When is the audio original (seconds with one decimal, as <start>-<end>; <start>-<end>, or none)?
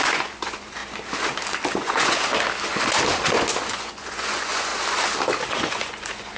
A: 0.8-1.7; 2.3-3.7; 4.7-5.5